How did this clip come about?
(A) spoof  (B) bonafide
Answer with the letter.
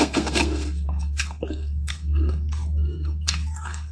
A